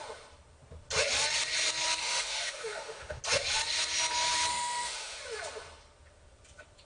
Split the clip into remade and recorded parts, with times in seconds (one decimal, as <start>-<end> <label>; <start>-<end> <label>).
0.0-2.0 recorded; 2.0-3.2 remade; 3.2-4.5 recorded; 4.5-5.2 remade; 5.2-6.8 recorded